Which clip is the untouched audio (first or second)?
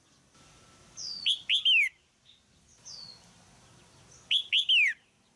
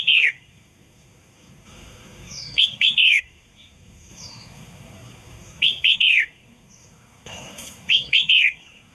first